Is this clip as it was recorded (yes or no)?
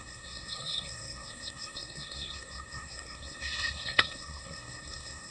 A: no